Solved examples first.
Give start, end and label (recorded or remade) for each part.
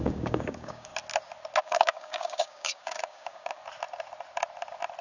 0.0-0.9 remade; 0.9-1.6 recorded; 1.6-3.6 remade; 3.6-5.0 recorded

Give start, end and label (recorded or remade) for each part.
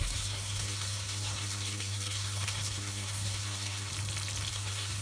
0.0-3.9 remade; 3.9-4.5 recorded; 4.5-5.0 remade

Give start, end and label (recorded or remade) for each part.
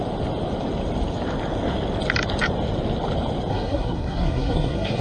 0.0-3.5 recorded; 3.5-5.0 remade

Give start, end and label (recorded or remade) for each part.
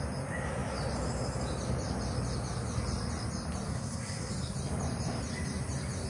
0.0-3.7 recorded; 3.7-4.3 remade; 4.3-6.1 recorded